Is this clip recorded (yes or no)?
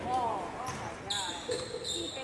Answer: yes